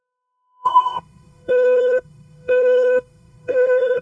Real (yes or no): no